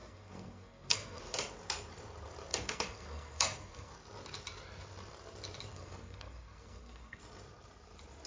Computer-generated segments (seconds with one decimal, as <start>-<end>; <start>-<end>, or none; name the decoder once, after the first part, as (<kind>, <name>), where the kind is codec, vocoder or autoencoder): 0.0-1.2 (codec, SNAC); 2.5-3.9; 5.7-7.2